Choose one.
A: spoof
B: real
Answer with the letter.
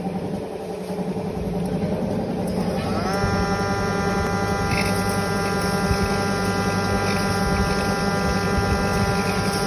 B